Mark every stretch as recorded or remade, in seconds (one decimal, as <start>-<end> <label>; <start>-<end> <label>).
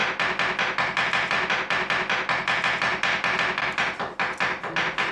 0.0-5.1 recorded